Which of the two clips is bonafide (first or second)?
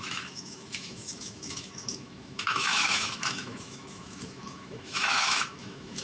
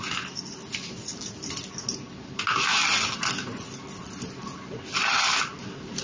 second